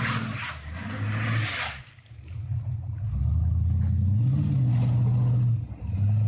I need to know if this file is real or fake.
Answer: real